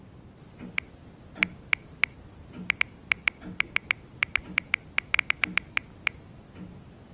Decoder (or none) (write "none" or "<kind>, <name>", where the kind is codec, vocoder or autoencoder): none